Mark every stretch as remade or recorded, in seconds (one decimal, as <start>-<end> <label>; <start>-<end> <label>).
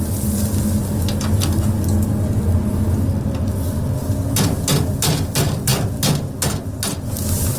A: 0.0-7.6 recorded